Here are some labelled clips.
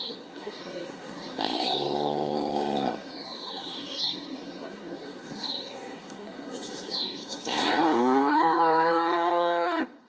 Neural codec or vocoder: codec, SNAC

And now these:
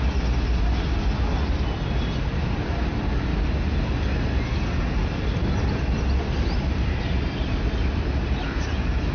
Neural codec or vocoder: none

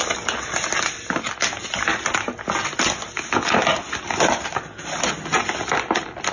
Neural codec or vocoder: none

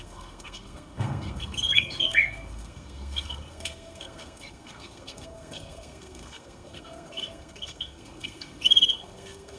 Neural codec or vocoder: codec, SNAC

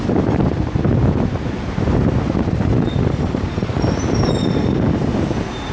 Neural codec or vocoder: vocoder, BigVGAN v2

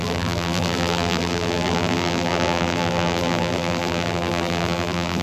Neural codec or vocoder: vocoder, BigVGAN v2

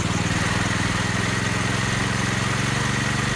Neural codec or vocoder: none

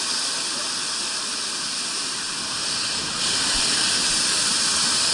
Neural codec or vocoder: none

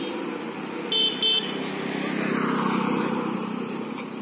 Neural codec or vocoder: none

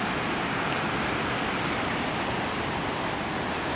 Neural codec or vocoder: none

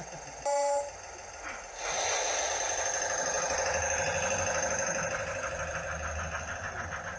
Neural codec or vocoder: none